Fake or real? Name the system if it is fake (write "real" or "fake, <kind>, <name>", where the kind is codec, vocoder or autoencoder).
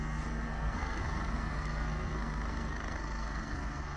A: fake, codec, SNAC